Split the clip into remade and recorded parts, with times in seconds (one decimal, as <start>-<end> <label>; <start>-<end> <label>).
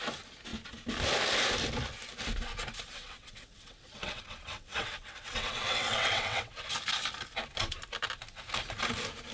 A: 0.0-2.9 recorded; 2.9-6.5 remade; 6.5-9.3 recorded